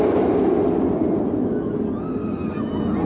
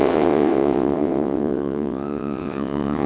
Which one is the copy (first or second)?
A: second